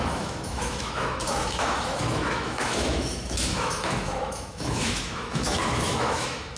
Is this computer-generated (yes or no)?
yes